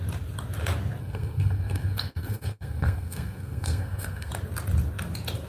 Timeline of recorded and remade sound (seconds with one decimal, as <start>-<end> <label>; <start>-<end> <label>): 0.0-1.0 recorded; 1.0-4.3 remade; 4.3-5.5 recorded